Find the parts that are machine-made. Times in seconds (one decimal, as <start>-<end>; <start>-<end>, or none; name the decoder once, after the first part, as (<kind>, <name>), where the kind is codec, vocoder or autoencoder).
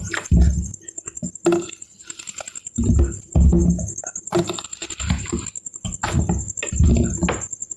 none